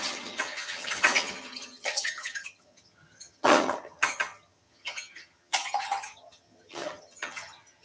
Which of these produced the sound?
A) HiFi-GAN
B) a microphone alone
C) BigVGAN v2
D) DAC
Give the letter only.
A